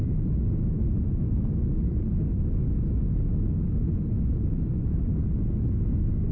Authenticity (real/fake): real